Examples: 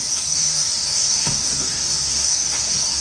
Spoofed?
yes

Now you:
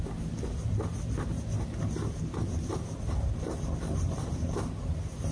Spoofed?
no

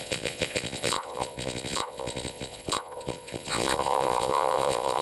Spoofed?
yes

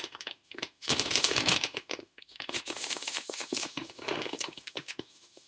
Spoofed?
yes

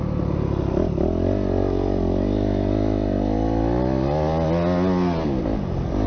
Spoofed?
no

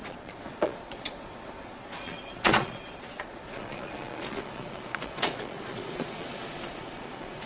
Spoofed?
yes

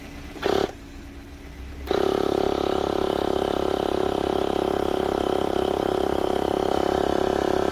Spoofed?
no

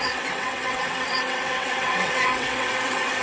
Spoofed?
yes